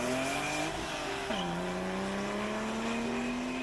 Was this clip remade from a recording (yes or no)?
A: no